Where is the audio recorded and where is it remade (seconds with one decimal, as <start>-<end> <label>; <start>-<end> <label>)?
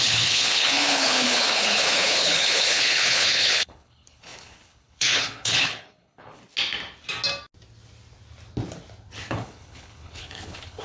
0.0-6.4 remade; 6.4-9.3 recorded; 9.3-10.8 remade